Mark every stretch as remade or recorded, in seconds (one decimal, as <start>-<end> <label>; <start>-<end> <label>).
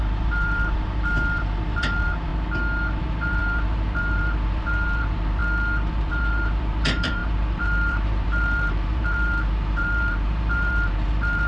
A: 0.0-2.3 remade; 2.3-3.0 recorded; 3.0-5.4 remade; 5.4-5.9 recorded; 5.9-11.5 remade